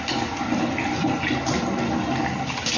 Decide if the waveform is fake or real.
real